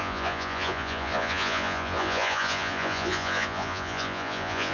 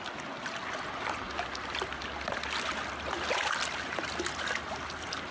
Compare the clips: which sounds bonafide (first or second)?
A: second